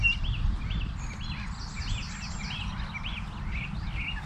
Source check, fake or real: real